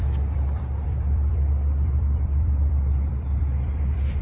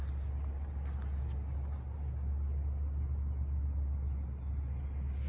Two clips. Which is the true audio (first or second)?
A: second